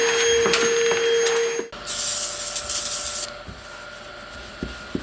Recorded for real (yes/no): yes